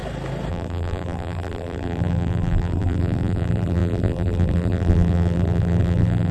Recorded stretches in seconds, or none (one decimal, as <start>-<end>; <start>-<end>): 0.0-0.5